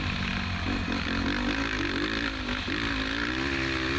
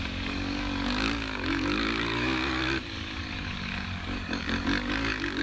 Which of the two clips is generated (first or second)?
second